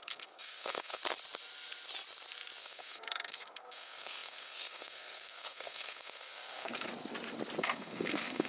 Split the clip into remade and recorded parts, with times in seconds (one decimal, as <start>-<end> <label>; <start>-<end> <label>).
0.0-1.0 remade; 1.0-2.6 recorded; 2.6-6.9 remade; 6.9-7.6 recorded; 7.6-8.5 remade